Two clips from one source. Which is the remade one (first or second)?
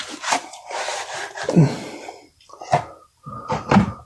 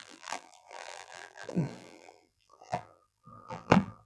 second